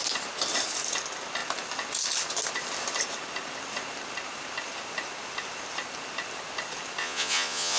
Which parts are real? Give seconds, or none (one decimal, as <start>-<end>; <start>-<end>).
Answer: 0.0-7.0